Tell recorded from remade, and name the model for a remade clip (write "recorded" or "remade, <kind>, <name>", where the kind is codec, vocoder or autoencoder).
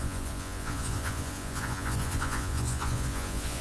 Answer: remade, vocoder, Vocos